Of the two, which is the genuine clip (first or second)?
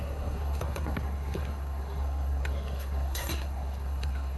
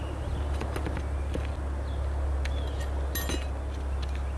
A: second